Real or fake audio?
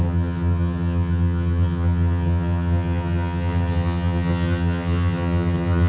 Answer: fake